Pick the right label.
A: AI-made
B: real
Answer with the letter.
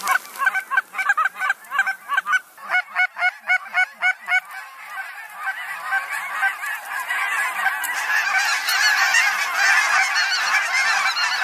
B